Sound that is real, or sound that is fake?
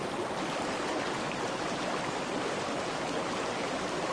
real